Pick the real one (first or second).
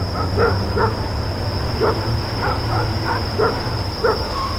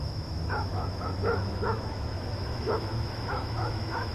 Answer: first